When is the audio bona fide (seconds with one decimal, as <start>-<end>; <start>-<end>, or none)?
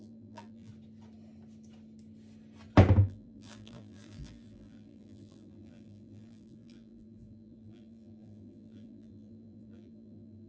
0.7-3.0